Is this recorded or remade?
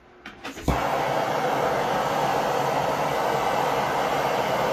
recorded